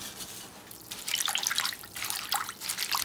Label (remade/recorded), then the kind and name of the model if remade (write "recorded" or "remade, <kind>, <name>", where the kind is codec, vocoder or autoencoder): recorded